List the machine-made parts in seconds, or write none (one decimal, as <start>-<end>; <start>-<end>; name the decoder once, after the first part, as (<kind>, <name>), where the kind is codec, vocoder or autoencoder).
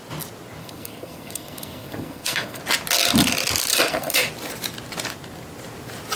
0.6-2.6 (codec, SNAC); 3.7-4.3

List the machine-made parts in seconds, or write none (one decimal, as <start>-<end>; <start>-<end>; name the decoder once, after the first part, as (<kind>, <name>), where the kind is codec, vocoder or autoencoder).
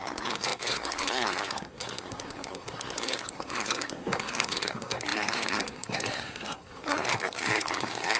0.0-8.2 (codec, SNAC)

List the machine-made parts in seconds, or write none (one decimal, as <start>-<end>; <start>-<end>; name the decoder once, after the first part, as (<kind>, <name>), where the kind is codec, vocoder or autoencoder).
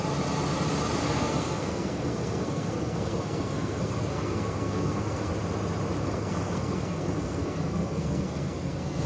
1.0-5.3 (codec, SNAC); 6.0-9.1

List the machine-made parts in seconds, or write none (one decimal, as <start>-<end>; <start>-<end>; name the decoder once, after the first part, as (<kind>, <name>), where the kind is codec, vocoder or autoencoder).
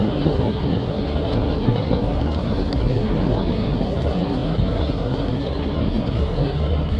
0.0-7.0 (codec, SNAC)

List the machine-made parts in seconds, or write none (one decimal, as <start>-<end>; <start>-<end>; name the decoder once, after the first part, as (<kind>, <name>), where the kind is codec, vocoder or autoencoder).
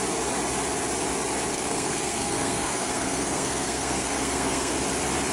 1.5-4.7 (codec, SNAC)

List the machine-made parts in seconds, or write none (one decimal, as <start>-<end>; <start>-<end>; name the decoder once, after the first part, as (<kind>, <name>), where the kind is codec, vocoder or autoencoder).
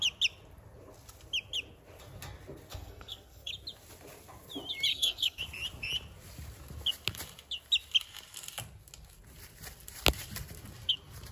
2.7-3.5 (codec, SNAC); 4.9-5.4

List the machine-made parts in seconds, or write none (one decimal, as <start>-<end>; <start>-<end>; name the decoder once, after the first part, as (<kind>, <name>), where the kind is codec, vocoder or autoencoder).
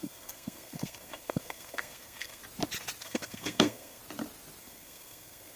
0.0-2.4 (codec, SNAC); 3.0-4.0; 4.6-5.6